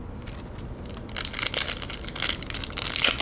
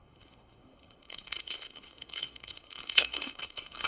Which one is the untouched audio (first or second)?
first